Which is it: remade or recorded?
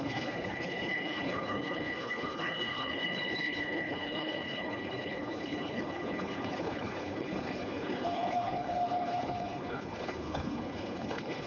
remade